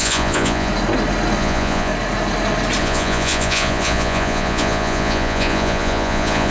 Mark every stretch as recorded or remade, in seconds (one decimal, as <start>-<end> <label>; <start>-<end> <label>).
0.0-0.7 remade; 0.7-1.4 recorded; 1.4-1.9 remade; 1.9-2.8 recorded; 2.8-6.5 remade